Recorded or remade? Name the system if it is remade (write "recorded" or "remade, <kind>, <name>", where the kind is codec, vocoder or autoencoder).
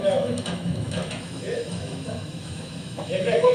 remade, autoencoder, DAC-VAE